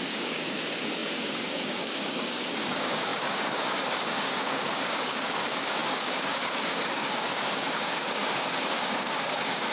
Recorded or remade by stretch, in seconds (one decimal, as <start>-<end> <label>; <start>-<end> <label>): 0.0-9.7 remade